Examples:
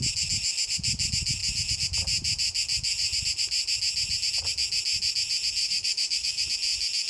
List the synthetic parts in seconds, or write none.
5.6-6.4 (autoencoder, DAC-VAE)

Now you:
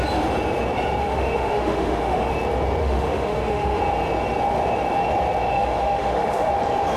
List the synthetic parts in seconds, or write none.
1.0-2.3 (autoencoder, DAC-VAE); 2.8-3.8; 5.5-6.5